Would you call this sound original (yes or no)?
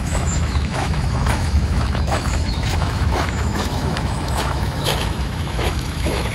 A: no